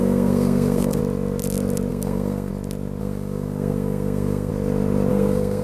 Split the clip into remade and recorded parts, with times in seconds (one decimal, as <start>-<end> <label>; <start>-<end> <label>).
0.0-1.0 remade; 1.0-1.9 recorded; 1.9-2.5 remade; 2.5-3.0 recorded; 3.0-4.5 remade; 4.5-5.1 recorded; 5.1-5.6 remade